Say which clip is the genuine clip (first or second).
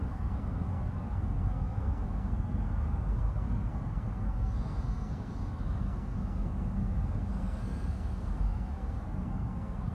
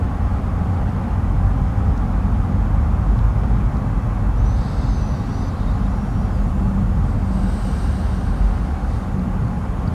second